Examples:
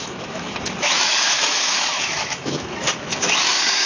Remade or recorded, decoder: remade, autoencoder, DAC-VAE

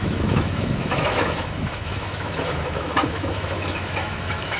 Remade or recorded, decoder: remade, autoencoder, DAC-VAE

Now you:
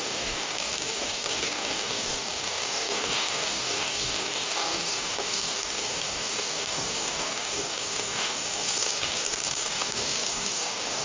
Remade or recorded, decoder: remade, codec, DAC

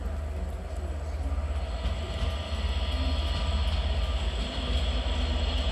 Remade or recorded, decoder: recorded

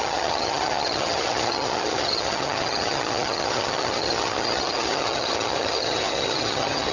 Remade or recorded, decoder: remade, vocoder, HiFi-GAN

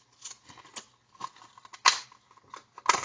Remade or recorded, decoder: recorded